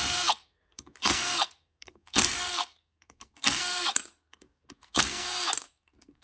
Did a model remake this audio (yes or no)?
yes